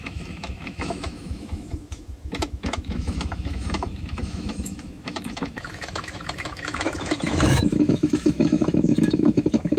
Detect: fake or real fake